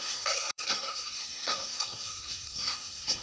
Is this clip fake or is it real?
fake